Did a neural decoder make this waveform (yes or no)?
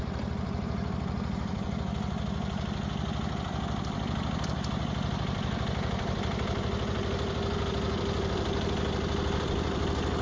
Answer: yes